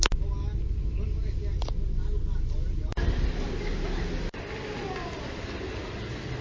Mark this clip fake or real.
real